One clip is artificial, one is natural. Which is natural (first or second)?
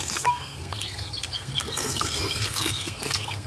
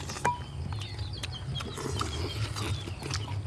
second